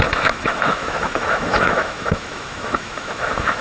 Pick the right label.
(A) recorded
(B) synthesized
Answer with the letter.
B